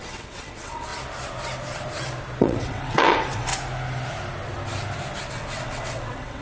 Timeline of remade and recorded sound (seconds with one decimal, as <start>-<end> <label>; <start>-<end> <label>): 0.0-0.9 remade; 0.9-2.4 recorded; 2.4-3.5 remade; 3.5-5.3 recorded; 5.3-6.4 remade

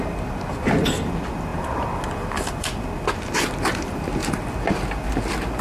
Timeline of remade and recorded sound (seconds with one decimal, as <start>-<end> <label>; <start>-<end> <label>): 0.0-5.6 recorded

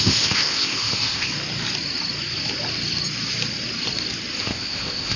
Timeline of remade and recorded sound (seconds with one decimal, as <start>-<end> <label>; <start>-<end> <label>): 0.0-1.3 remade; 1.3-4.4 recorded; 4.4-5.2 remade

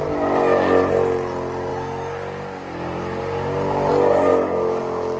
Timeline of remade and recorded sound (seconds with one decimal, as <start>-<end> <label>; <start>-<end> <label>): 0.0-4.3 recorded; 4.3-4.8 remade; 4.8-5.2 recorded

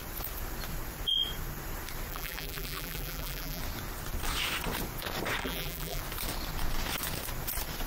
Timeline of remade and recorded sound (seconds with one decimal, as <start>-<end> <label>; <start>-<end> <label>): 0.0-2.1 recorded; 2.1-3.6 remade; 3.6-5.4 recorded; 5.4-6.0 remade; 6.0-7.9 recorded

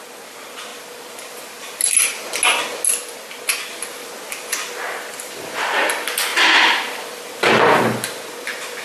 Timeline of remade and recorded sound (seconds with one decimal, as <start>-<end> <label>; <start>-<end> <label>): 0.0-8.8 recorded

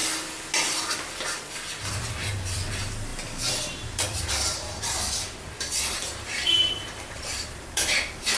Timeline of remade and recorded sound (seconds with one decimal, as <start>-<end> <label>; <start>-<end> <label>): 0.0-2.1 recorded; 2.1-8.4 remade

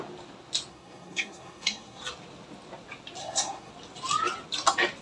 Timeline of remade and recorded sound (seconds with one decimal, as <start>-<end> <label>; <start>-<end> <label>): 0.0-0.7 recorded; 0.7-2.0 remade; 2.0-3.2 recorded; 3.2-3.7 remade; 3.7-5.0 recorded